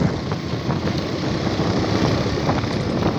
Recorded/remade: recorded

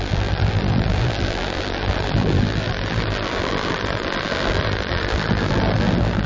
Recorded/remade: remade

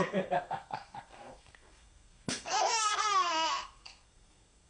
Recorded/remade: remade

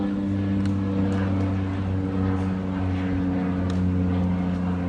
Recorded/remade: recorded